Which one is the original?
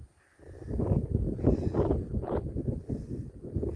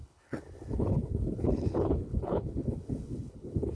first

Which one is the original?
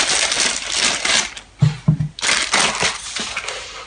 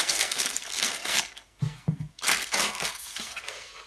first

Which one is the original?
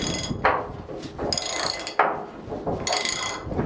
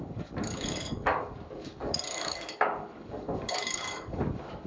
first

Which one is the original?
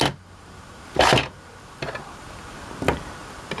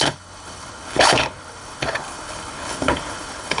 first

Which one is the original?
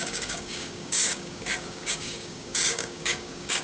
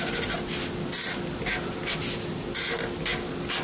second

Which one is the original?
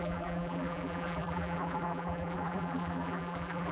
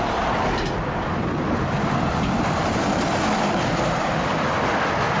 second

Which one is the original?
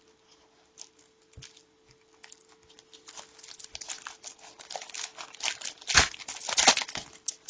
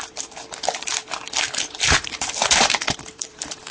first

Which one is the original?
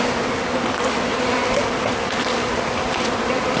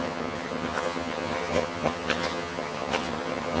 first